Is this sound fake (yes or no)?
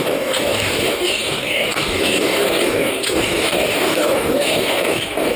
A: yes